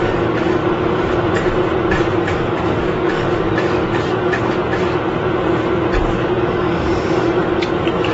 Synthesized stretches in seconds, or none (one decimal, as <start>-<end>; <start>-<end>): 0.0-0.6; 2.2-4.6; 6.0-8.1